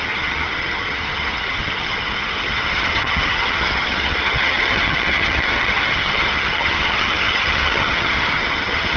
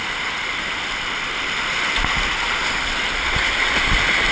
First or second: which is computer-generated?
first